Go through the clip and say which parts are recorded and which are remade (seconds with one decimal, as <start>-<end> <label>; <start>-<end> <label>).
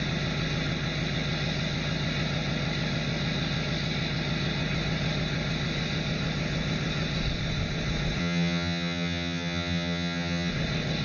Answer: 0.0-8.2 recorded; 8.2-10.5 remade; 10.5-11.0 recorded